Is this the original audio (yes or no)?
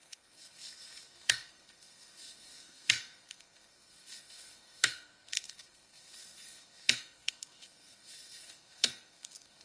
no